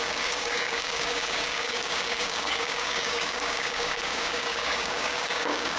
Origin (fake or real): fake